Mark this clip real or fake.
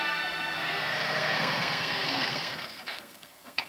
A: fake